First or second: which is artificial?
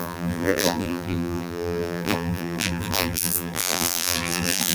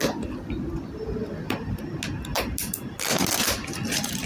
first